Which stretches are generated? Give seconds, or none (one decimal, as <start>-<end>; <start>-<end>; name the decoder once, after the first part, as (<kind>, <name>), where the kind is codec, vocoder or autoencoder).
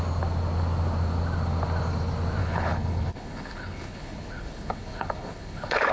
2.4-5.9 (codec, HILCodec)